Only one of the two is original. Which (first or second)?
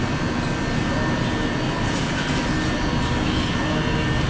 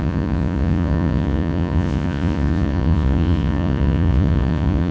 first